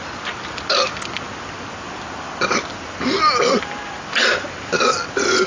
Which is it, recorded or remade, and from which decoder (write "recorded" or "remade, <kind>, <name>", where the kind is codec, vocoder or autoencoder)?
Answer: recorded